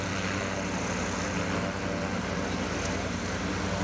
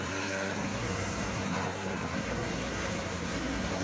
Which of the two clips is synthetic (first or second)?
second